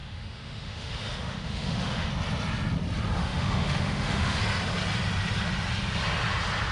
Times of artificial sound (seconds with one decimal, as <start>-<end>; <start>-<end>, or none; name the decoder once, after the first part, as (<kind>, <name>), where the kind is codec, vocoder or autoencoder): 0.0-2.1 (autoencoder, DAC-VAE); 3.2-4.4